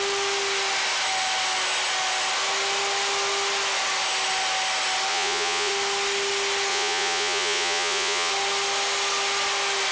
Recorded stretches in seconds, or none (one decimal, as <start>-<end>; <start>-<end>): 0.0-5.1; 5.7-6.7; 8.3-9.9